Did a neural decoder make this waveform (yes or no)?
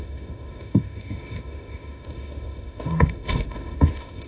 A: yes